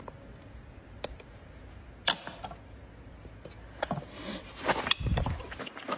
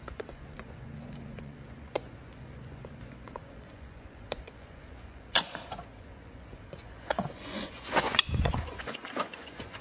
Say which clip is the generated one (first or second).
second